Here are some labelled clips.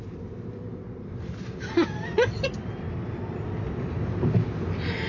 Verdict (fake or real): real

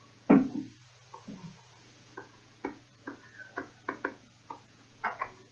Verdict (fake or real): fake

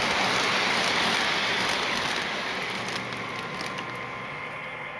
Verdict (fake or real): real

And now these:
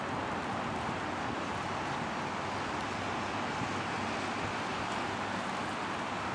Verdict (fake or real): real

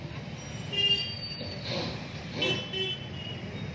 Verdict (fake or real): real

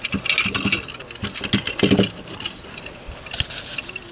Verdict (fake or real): real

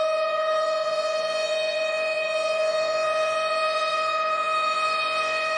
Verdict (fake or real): fake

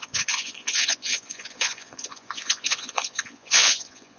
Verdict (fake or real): fake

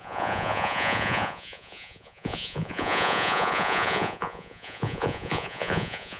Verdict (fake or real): fake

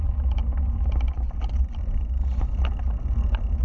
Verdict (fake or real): real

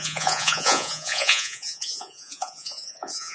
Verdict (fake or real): fake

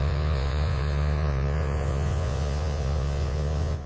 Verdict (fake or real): fake